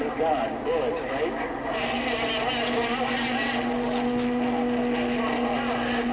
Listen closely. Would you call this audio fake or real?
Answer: real